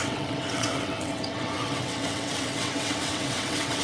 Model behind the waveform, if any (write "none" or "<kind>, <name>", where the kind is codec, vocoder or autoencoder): vocoder, WaveNeXt